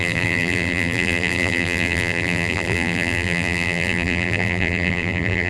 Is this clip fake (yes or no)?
yes